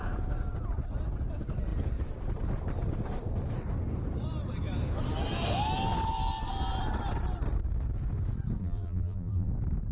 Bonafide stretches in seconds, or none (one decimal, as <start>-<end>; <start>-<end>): 0.0-8.6; 9.5-9.9